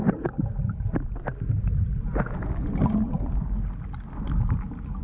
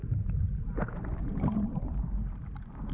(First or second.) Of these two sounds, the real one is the first